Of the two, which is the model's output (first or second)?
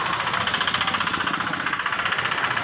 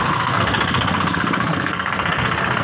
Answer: second